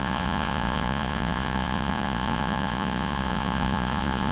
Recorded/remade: remade